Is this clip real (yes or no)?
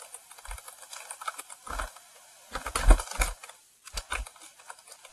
yes